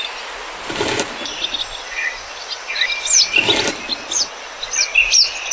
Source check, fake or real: real